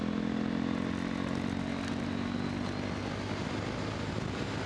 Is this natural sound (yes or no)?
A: yes